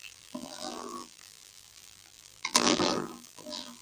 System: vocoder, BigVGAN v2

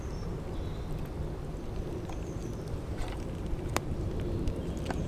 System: vocoder, BigVGAN v2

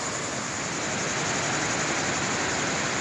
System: none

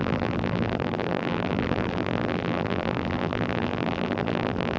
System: vocoder, BigVGAN v2